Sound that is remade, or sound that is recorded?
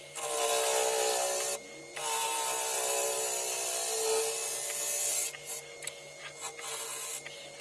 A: recorded